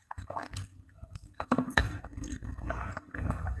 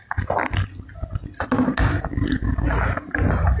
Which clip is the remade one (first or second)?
first